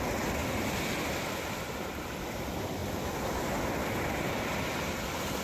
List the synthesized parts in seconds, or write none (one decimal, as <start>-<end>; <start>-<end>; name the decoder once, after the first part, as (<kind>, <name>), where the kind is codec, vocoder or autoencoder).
none